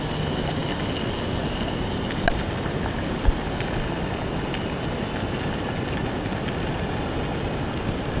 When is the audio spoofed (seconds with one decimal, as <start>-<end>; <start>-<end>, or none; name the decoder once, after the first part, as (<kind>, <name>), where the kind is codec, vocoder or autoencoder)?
none